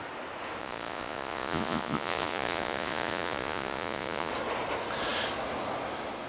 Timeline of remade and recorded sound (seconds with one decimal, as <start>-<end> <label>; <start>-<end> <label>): 0.0-0.6 recorded; 0.6-4.3 remade; 4.3-6.3 recorded

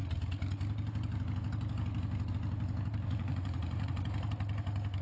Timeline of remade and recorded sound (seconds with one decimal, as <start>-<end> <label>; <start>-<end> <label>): 0.0-3.1 recorded; 3.1-4.0 remade; 4.0-5.0 recorded

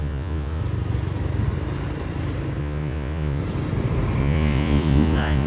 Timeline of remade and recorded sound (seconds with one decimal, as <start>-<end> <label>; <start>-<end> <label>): 0.0-0.6 remade; 0.6-2.6 recorded; 2.6-3.4 remade; 3.4-4.2 recorded; 4.2-5.5 remade

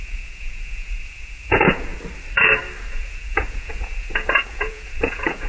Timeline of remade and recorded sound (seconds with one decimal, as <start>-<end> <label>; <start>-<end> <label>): 0.0-1.9 remade; 1.9-2.8 recorded; 2.8-5.5 remade

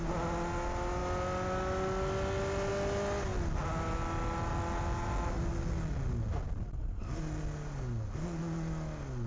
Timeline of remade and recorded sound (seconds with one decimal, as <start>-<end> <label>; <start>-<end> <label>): 0.0-9.3 recorded

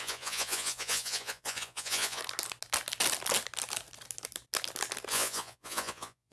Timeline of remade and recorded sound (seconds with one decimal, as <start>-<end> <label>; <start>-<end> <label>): 0.0-2.2 remade; 2.2-5.1 recorded; 5.1-6.3 remade

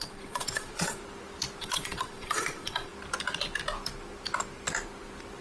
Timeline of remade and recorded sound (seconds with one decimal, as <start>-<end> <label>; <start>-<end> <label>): 0.0-1.0 remade; 1.0-1.6 recorded; 1.6-2.9 remade; 2.9-5.4 recorded